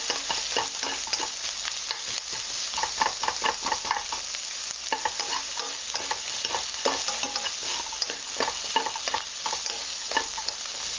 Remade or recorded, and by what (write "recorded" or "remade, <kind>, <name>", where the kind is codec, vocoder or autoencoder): recorded